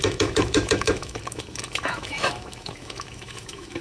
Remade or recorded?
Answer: remade